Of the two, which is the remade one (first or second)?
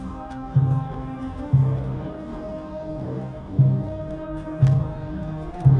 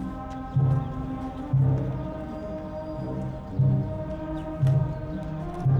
first